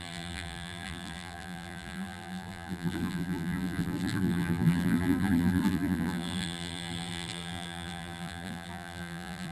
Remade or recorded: remade